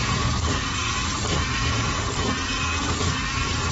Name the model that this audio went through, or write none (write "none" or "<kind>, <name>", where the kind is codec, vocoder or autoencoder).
none